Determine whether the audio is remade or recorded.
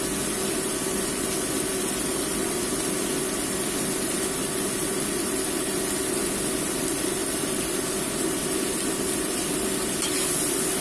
recorded